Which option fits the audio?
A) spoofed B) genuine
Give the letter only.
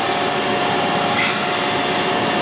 B